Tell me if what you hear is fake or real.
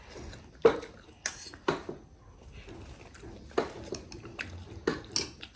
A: real